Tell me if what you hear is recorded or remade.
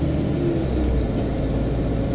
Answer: recorded